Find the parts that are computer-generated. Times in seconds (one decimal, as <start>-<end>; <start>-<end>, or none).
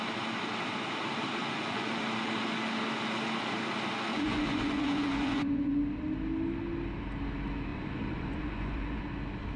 1.4-2.0; 4.1-5.7; 7.7-9.0